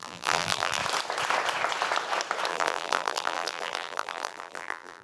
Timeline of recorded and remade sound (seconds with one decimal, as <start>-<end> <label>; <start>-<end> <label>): 0.0-0.8 remade; 0.8-2.5 recorded; 2.5-5.0 remade